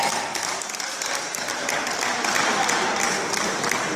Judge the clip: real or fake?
real